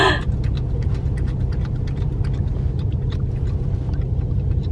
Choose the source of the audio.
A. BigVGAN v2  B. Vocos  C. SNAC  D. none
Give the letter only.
D